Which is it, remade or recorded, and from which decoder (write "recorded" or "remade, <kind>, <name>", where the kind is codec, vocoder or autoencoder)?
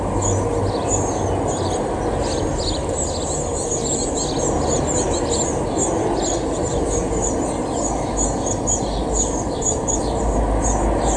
recorded